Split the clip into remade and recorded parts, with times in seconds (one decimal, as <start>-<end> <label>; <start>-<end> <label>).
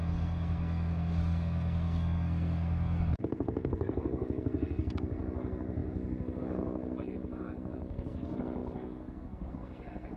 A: 0.0-10.2 remade